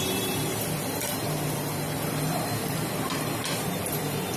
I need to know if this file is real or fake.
fake